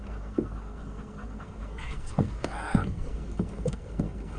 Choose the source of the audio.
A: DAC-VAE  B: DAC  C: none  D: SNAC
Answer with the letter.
D